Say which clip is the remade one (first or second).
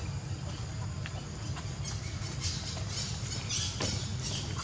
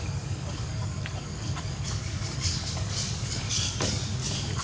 second